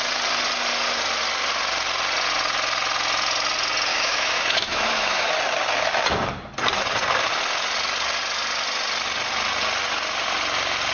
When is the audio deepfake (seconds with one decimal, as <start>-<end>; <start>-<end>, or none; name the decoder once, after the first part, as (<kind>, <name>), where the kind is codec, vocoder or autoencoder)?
3.9-5.3 (autoencoder, DAC-VAE)